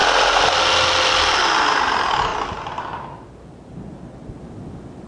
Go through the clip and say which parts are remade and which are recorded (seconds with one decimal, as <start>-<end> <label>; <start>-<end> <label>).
0.0-5.1 recorded